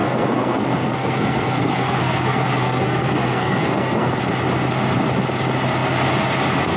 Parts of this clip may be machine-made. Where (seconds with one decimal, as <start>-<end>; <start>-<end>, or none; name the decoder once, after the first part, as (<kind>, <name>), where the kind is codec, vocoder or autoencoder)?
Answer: 0.0-4.1 (codec, SNAC)